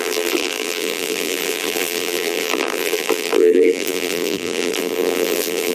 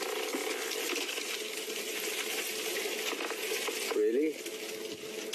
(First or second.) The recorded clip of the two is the second